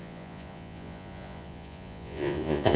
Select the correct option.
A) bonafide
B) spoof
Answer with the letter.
B